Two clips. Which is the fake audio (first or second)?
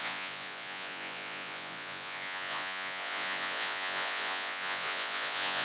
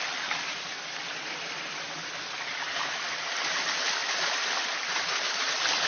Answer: first